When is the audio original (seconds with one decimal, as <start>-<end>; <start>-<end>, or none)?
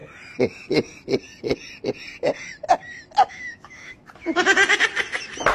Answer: 0.0-3.3; 4.0-5.5